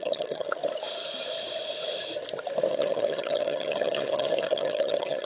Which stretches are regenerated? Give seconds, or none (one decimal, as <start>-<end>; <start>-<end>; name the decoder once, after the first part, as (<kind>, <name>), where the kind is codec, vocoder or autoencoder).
0.0-0.6 (vocoder, HiFi-GAN); 2.7-5.2